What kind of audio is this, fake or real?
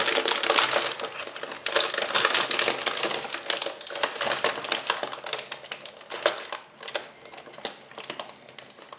real